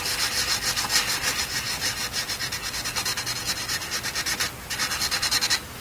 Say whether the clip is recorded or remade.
recorded